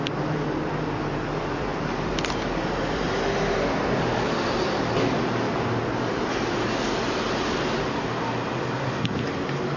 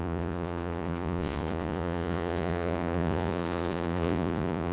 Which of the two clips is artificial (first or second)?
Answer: second